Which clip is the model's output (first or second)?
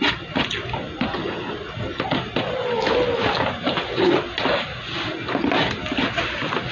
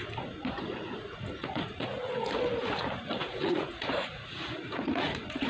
second